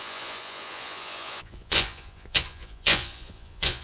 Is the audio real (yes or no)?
no